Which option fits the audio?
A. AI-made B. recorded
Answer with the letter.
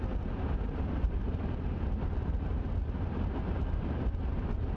A